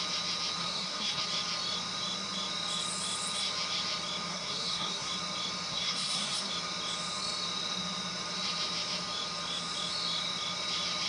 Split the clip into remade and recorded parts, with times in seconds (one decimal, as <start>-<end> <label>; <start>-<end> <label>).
0.0-0.6 recorded; 0.6-1.2 remade; 1.2-4.3 recorded; 4.3-5.1 remade; 5.1-5.7 recorded; 5.7-6.5 remade; 6.5-11.1 recorded